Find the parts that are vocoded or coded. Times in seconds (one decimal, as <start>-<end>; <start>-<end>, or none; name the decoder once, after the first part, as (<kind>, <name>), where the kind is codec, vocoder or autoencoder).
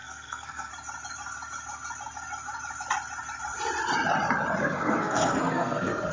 0.0-0.7 (codec, SNAC); 4.6-6.1